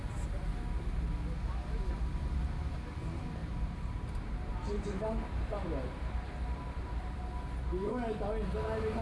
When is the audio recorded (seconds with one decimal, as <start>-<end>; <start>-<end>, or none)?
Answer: 0.0-3.4; 7.2-9.0